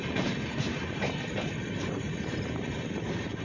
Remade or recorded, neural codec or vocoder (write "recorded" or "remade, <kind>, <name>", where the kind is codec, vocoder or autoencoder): remade, vocoder, BigVGAN v2